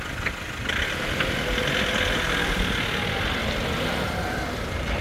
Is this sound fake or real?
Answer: real